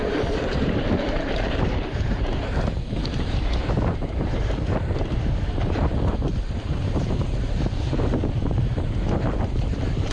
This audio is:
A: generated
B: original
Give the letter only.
A